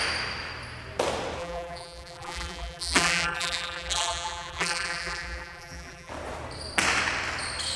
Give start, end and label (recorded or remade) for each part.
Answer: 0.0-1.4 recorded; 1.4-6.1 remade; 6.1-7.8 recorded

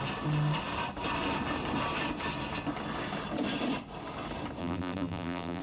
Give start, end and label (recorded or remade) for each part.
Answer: 0.0-4.6 recorded; 4.6-5.6 remade

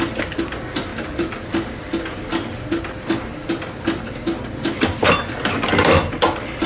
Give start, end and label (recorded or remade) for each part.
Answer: 0.0-0.9 recorded; 0.9-1.5 remade; 1.5-6.7 recorded

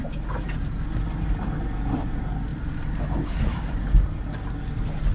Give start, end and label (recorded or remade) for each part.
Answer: 0.0-2.5 recorded; 2.5-3.8 remade; 3.8-5.1 recorded

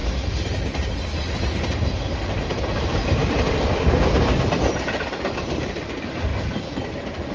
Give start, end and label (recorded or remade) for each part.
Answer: 0.0-7.3 recorded

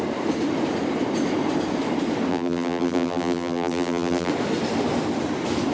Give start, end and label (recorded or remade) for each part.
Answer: 0.0-2.3 recorded; 2.3-4.3 remade; 4.3-5.7 recorded

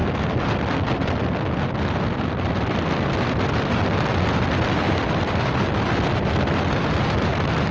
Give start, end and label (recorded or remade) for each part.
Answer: 0.0-7.7 recorded

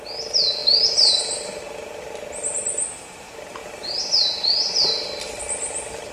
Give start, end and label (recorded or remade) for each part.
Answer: 0.0-0.6 recorded; 0.6-1.6 remade; 1.6-6.1 recorded